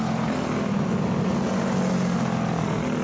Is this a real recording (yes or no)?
yes